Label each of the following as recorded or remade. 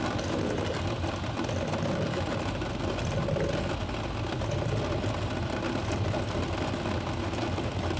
recorded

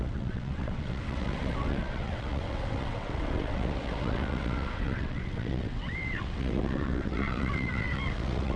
remade